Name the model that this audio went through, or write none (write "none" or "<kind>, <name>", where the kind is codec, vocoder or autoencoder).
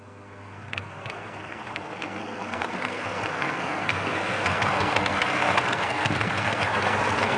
codec, SNAC